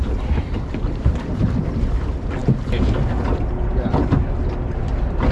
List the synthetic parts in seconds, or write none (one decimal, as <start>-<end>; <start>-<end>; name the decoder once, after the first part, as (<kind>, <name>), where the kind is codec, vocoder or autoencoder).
0.0-2.4 (vocoder, BigVGAN v2); 4.8-5.3

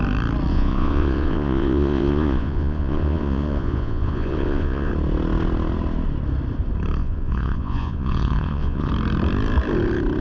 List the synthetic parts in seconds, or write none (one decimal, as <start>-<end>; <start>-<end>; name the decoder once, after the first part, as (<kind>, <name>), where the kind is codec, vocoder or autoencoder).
0.5-4.9 (vocoder, Vocos); 7.0-8.9

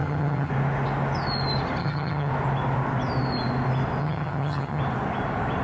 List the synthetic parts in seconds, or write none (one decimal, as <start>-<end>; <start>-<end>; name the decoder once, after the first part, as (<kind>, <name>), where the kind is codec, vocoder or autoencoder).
0.0-0.5 (vocoder, HiFi-GAN); 1.8-2.3; 4.0-4.8